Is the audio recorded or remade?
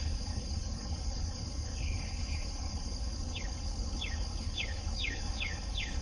remade